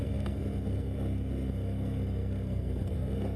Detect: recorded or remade remade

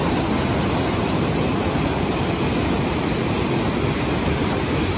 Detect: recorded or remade recorded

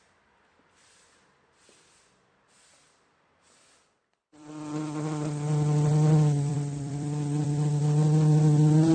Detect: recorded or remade remade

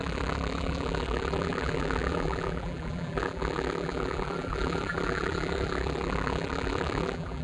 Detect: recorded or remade remade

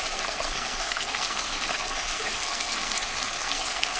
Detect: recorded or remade remade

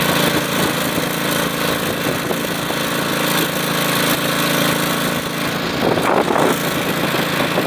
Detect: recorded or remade recorded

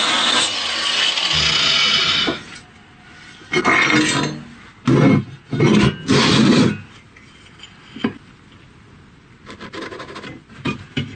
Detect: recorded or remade recorded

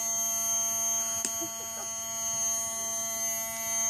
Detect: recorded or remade recorded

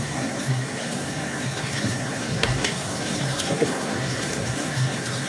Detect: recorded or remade remade